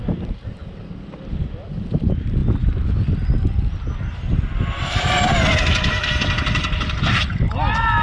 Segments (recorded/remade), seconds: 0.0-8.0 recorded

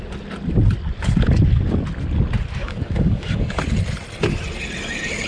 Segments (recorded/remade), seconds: 0.0-2.6 recorded; 2.6-3.6 remade; 3.6-5.3 recorded

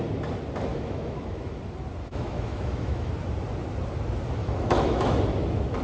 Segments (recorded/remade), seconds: 0.0-0.7 recorded; 0.7-1.6 remade; 1.6-2.0 recorded; 2.0-3.1 remade; 3.1-4.4 recorded; 4.4-5.2 remade; 5.2-5.8 recorded

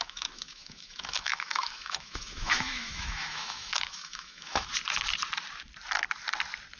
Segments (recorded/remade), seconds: 0.0-4.7 remade; 4.7-6.8 recorded

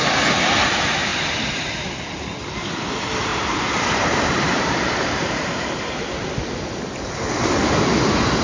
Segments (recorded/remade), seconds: 0.0-3.3 recorded; 3.3-6.2 remade; 6.2-8.4 recorded

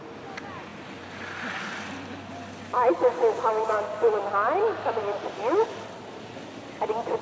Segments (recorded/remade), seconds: 0.0-7.2 recorded

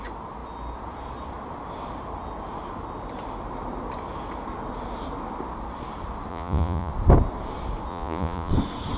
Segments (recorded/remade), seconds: 0.0-6.3 recorded; 6.3-6.9 remade; 6.9-7.9 recorded; 7.9-8.5 remade; 8.5-9.0 recorded